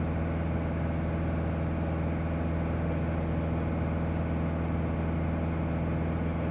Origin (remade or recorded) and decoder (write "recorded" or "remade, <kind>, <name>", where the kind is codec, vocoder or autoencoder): recorded